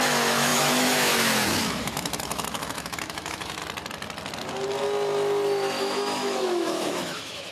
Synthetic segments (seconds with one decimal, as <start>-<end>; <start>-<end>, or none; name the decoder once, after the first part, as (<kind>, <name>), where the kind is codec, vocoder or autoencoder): 0.0-3.6 (autoencoder, DAC-VAE); 5.8-7.5